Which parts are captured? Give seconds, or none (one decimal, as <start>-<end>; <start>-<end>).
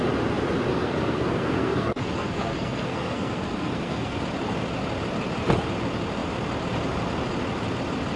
0.0-0.7; 4.2-8.2